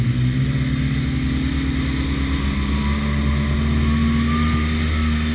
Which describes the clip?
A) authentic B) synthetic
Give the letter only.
A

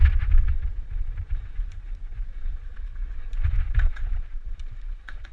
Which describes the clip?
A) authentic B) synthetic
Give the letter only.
B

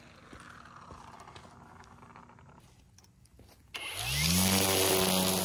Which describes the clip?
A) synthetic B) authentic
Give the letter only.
B